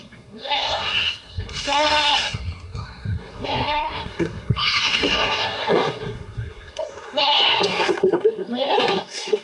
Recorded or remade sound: remade